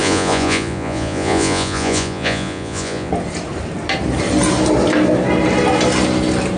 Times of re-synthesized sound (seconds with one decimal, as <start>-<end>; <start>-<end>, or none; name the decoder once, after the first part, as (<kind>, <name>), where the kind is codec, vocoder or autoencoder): 0.0-3.1 (vocoder, Vocos)